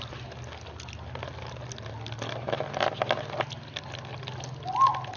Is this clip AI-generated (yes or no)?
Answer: no